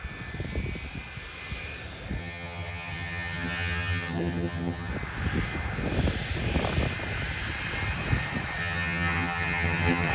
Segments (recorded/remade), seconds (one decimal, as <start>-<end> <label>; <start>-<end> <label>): 0.0-2.2 recorded; 2.2-4.9 remade; 4.9-8.6 recorded; 8.6-10.1 remade